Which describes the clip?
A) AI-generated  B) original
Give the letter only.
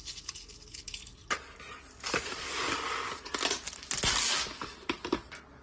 B